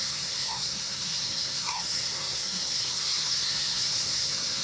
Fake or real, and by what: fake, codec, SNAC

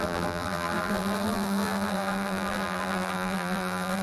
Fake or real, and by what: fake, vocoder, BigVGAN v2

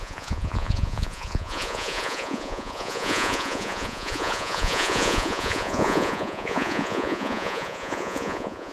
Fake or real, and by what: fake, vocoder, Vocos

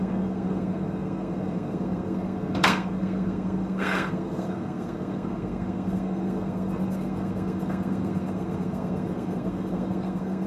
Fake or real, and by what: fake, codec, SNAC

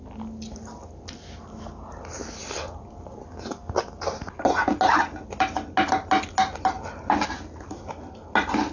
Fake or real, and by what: real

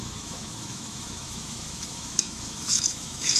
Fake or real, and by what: fake, autoencoder, DAC-VAE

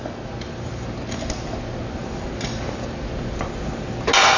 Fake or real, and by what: real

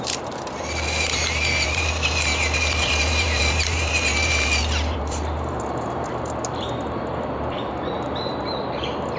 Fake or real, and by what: fake, vocoder, BigVGAN v2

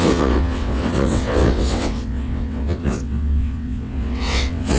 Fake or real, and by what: fake, vocoder, WaveNeXt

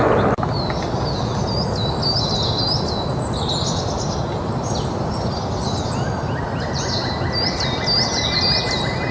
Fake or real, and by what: real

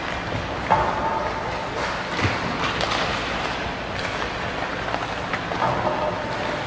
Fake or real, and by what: real